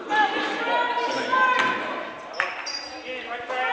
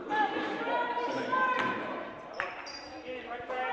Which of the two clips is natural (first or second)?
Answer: first